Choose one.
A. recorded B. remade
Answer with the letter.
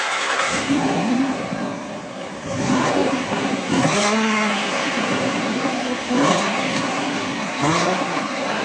B